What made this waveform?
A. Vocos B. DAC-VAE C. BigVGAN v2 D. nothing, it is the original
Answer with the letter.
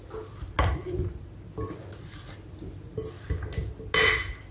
D